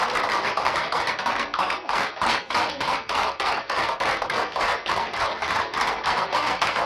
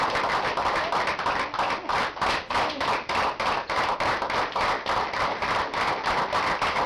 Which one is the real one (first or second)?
second